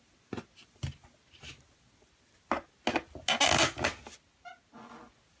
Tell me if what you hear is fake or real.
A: real